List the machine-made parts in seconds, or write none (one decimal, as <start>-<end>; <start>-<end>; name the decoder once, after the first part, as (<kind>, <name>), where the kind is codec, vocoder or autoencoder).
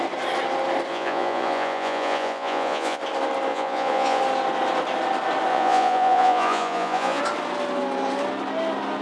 0.9-3.0 (vocoder, Vocos); 3.5-4.2; 5.5-7.2